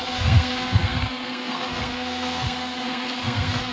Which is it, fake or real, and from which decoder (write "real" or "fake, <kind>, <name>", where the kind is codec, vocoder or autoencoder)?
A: fake, codec, SNAC